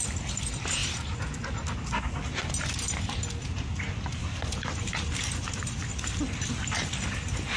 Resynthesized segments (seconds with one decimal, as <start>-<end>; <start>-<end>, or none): 4.1-5.8